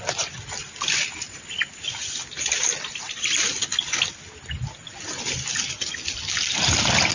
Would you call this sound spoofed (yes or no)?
no